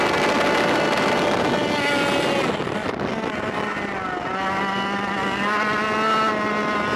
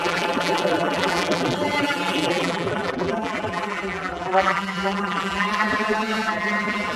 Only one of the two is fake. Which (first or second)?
second